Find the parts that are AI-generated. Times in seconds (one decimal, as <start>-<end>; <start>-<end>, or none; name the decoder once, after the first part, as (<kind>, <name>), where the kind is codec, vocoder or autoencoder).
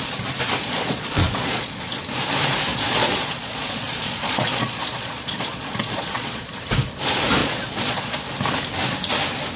0.6-1.9 (vocoder, Vocos); 2.7-6.5; 7.4-8.2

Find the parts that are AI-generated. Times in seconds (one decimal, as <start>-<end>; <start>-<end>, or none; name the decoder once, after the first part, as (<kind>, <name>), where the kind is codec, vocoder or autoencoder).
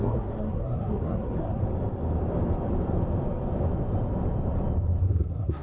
0.0-1.6 (codec, SNAC); 5.0-5.6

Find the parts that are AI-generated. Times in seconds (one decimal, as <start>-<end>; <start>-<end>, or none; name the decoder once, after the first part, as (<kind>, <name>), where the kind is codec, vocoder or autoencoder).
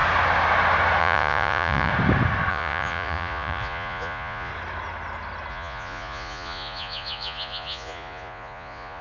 1.0-1.9 (vocoder, Vocos); 2.5-4.5; 5.5-9.0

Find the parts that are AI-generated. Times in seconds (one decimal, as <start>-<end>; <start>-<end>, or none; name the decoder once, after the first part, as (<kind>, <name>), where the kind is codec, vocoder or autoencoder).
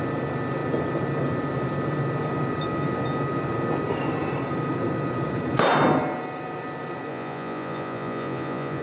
7.1-8.8 (vocoder, Vocos)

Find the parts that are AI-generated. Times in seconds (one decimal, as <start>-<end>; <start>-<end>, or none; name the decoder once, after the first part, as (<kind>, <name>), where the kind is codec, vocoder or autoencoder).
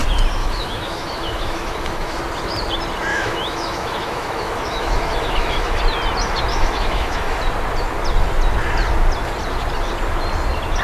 0.4-2.2 (autoencoder, DAC-VAE); 3.1-5.8; 6.5-7.4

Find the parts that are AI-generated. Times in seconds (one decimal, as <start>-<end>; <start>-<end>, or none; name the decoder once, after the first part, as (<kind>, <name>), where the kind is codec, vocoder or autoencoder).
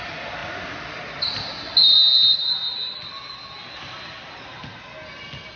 none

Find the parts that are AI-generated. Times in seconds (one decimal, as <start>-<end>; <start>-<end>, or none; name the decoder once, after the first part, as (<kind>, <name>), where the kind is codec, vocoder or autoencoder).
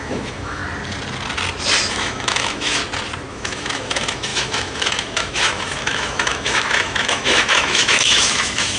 0.0-0.6 (autoencoder, DAC-VAE); 1.9-2.8; 3.3-8.8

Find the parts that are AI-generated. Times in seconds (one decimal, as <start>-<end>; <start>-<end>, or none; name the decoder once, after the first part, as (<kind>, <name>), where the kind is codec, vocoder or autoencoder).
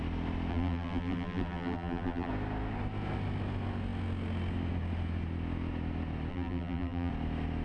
0.5-2.3 (vocoder, BigVGAN v2); 6.3-7.1